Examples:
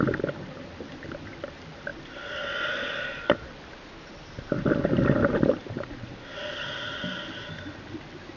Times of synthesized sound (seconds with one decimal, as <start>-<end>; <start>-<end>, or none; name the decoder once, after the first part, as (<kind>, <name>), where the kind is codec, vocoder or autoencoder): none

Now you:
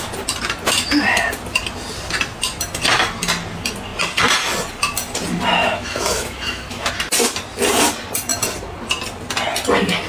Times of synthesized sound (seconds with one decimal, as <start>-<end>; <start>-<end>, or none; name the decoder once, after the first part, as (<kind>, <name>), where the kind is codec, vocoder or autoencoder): 5.6-6.9 (autoencoder, DAC-VAE)

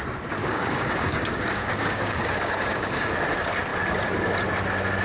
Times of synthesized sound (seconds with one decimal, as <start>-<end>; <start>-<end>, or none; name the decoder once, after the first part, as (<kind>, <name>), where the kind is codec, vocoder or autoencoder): 0.4-3.1 (codec, DAC)